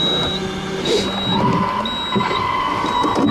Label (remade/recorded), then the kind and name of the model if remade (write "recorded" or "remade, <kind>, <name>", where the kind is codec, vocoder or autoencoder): recorded